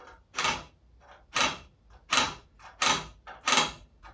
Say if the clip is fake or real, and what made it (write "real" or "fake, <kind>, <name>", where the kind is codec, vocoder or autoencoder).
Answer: real